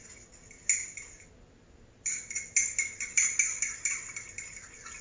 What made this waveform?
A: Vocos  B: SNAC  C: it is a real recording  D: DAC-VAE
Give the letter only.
C